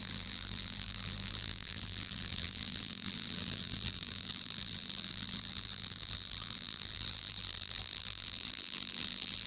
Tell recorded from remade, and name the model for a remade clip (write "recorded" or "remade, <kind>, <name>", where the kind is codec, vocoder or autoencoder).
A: remade, vocoder, BigVGAN v2